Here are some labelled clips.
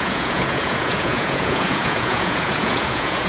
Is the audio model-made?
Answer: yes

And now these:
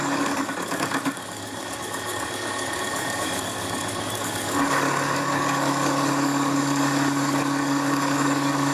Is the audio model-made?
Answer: yes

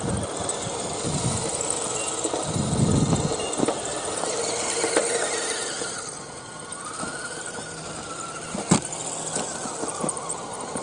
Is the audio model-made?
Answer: no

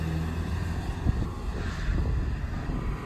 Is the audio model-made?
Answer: no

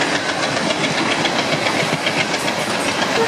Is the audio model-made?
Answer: no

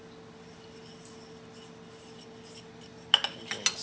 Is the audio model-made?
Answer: no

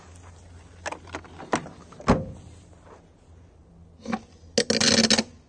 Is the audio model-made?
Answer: no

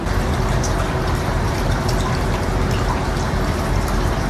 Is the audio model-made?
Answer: no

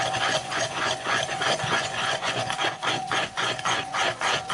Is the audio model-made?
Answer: yes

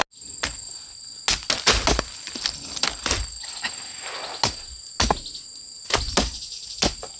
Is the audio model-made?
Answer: no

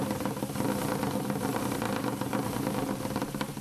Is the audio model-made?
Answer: no